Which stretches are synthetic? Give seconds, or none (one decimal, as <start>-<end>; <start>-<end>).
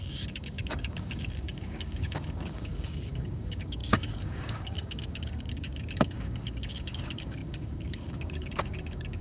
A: 0.0-9.2